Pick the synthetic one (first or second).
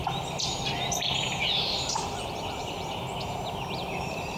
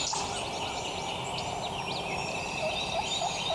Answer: first